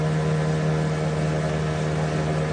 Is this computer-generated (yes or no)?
no